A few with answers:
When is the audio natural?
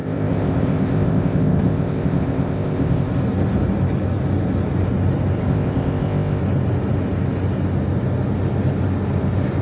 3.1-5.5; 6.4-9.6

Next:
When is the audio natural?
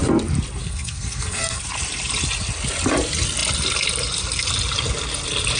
0.0-0.6; 1.6-5.6